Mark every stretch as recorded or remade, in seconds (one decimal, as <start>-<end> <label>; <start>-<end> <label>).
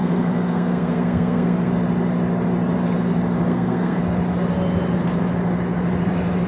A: 0.0-1.7 remade; 1.7-3.5 recorded; 3.5-4.0 remade; 4.0-6.5 recorded